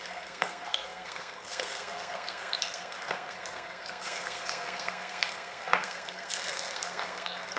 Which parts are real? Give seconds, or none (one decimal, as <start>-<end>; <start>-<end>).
none